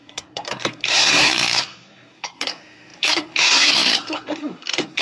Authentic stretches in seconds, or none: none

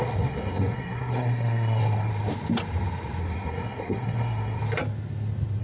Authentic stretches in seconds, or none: 2.1-3.2; 4.6-5.6

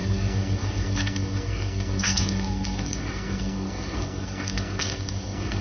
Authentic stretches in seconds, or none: none

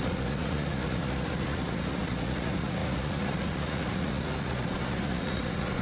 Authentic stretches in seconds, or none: none

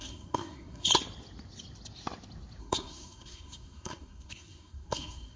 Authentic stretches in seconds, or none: 0.9-2.6